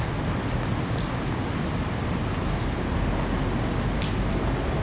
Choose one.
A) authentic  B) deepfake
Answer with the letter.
A